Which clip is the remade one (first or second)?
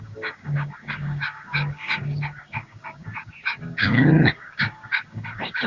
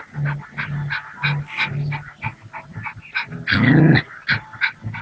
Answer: first